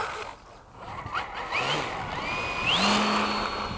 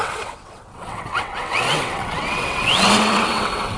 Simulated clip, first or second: second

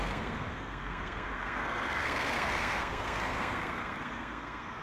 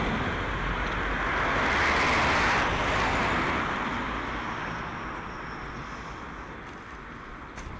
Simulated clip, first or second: first